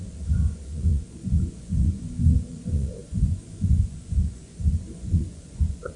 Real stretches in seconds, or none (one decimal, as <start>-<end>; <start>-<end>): none